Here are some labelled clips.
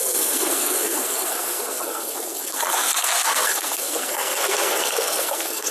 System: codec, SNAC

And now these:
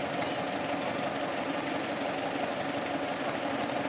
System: none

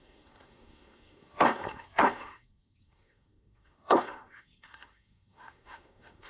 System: codec, SNAC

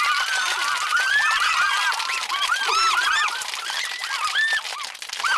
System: none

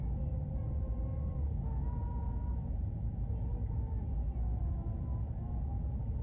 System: none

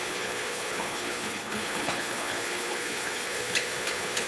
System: codec, HILCodec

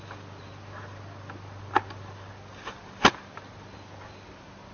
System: none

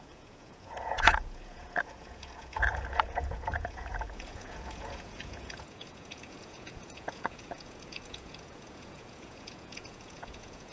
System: vocoder, Vocos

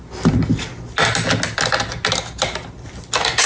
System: none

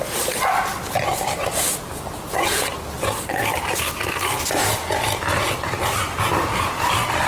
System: none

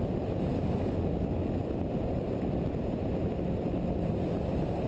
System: none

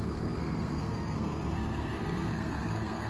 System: codec, SNAC